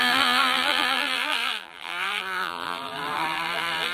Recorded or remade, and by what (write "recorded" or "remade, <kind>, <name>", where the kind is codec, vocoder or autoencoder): remade, vocoder, BigVGAN v2